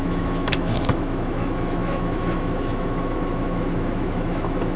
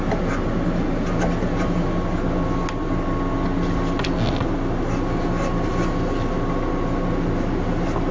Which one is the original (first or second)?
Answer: second